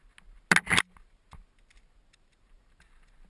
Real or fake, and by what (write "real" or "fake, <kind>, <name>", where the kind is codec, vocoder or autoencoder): real